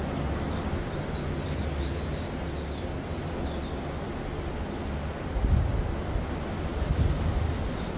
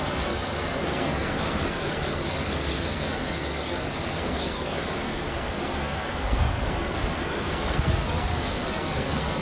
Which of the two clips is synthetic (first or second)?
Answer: second